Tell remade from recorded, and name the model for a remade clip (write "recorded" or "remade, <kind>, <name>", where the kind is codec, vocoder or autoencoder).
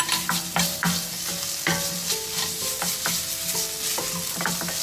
recorded